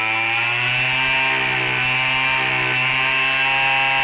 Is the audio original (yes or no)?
yes